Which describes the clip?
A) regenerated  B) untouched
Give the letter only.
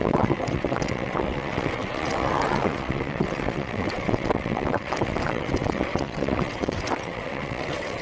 A